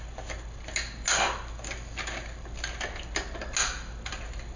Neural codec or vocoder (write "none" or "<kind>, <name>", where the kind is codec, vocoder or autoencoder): none